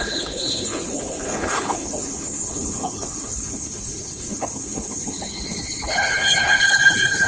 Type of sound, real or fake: fake